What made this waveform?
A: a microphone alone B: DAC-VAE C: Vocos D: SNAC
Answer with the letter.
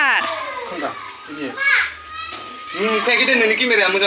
A